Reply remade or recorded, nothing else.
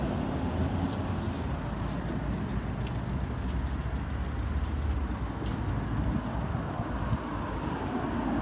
recorded